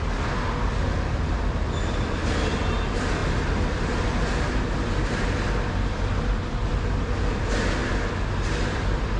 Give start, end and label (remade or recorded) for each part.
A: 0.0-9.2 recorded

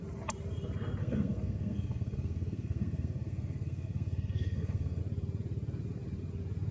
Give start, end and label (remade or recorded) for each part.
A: 0.0-1.0 recorded; 1.0-5.0 remade; 5.0-6.7 recorded

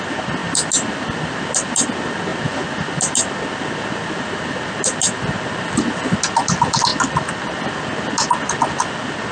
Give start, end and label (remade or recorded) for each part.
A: 0.0-9.3 recorded